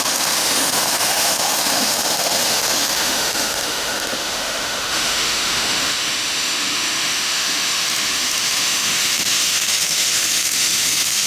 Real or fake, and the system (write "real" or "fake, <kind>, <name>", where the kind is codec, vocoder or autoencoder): fake, autoencoder, DAC-VAE